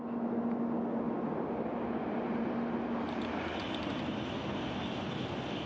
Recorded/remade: recorded